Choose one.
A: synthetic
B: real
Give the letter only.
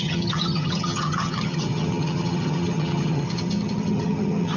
A